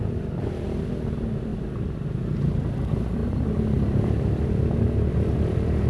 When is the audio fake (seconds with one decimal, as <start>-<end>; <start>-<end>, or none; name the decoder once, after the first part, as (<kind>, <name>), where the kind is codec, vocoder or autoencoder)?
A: 0.0-3.2 (vocoder, BigVGAN v2); 5.1-5.9